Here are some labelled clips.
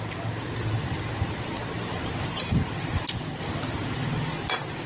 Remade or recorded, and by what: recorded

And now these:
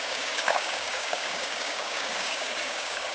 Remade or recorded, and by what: remade, codec, DAC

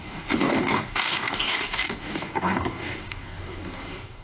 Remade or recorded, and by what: remade, codec, DAC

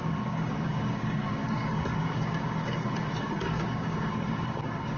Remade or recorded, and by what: remade, codec, DAC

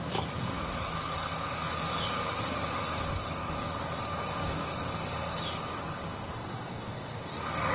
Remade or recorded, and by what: remade, codec, DAC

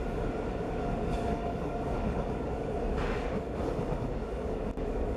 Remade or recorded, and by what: remade, codec, DAC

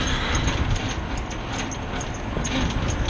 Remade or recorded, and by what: recorded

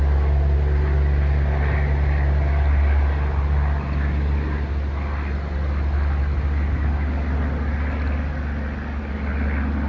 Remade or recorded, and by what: recorded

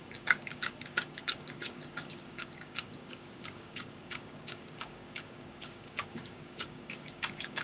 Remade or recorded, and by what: remade, codec, DAC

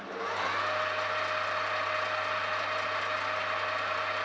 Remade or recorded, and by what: recorded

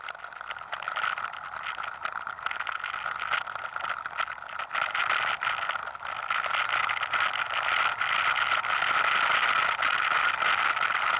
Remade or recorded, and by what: recorded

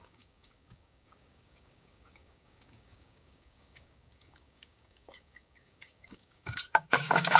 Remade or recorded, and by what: remade, codec, DAC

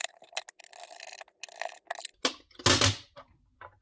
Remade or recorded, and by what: recorded